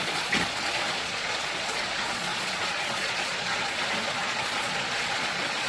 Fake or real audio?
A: fake